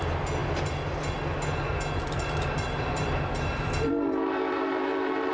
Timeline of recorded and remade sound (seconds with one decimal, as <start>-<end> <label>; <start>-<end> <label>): 0.0-0.4 recorded; 0.4-1.0 remade; 1.0-1.7 recorded; 1.7-5.3 remade